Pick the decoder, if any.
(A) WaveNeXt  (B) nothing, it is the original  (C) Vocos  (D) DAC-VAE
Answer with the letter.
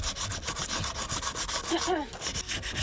B